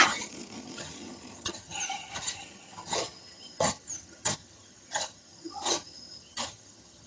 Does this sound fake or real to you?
fake